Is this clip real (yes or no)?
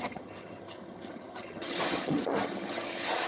no